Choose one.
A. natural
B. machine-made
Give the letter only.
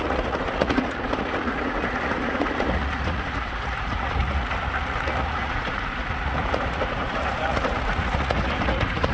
B